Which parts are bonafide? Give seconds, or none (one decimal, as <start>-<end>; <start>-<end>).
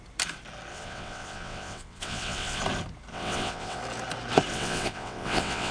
0.0-0.7; 2.6-3.1; 3.8-4.5